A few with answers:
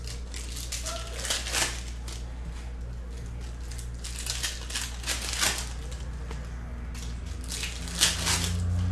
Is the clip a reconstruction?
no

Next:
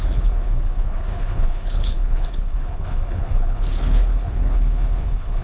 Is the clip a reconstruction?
yes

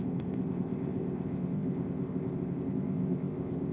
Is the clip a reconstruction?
yes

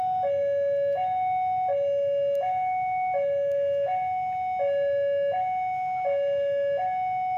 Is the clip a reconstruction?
no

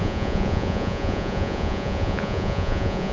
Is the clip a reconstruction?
yes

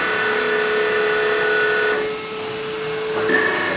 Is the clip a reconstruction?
no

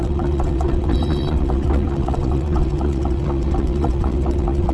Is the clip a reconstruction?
yes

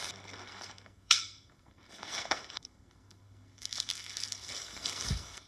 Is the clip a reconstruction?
yes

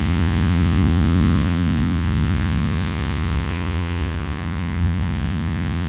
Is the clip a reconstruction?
yes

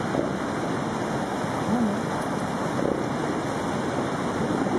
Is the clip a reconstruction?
no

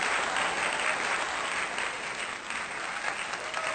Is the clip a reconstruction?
no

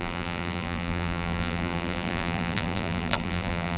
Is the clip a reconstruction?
yes